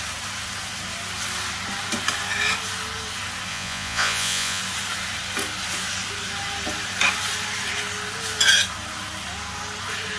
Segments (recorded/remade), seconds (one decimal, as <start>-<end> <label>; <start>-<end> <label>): 0.0-3.5 recorded; 3.5-4.6 remade; 4.6-10.2 recorded